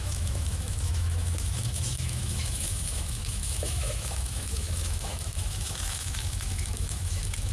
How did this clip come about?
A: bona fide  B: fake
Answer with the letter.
B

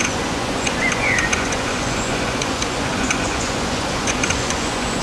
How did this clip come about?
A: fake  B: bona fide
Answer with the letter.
A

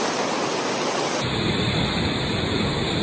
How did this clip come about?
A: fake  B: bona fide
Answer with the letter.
B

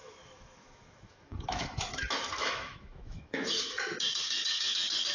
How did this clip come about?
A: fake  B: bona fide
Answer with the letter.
A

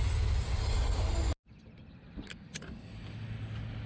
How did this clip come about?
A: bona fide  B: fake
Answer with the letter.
A